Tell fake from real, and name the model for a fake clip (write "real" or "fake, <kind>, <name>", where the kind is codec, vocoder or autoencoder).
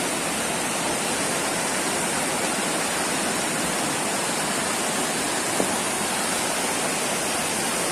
real